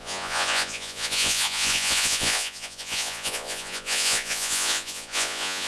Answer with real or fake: fake